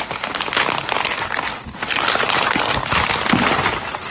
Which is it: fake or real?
real